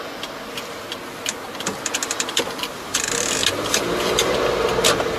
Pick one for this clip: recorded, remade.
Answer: recorded